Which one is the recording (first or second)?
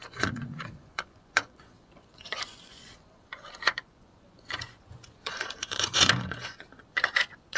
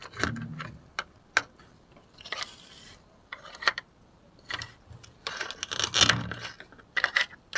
second